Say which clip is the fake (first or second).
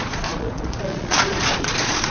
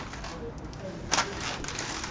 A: first